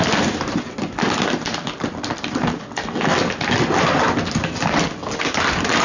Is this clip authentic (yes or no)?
yes